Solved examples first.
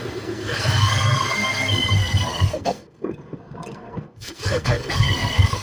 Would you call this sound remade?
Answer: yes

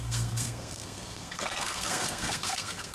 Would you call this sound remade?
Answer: yes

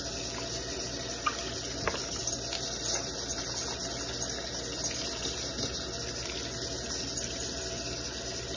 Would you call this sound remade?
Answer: no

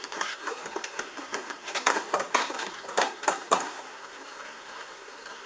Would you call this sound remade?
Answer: yes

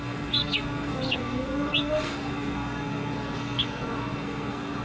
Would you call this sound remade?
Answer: yes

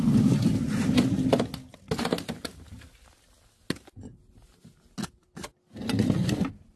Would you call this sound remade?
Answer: no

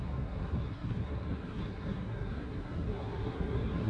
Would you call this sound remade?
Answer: yes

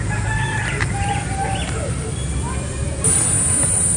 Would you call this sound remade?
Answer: no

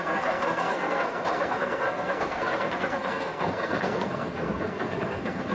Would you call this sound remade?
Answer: yes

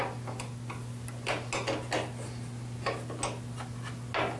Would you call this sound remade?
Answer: no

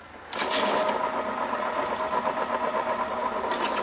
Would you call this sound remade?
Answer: no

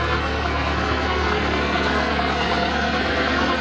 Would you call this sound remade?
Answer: yes